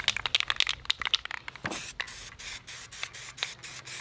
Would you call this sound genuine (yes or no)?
yes